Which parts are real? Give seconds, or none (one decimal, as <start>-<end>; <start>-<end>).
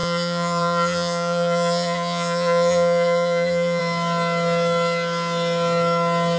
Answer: 3.8-6.4